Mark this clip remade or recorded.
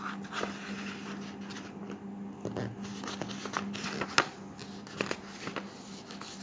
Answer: recorded